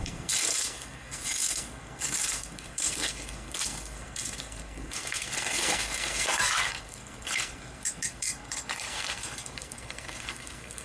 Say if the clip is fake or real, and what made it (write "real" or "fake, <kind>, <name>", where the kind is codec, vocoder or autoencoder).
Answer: fake, codec, SNAC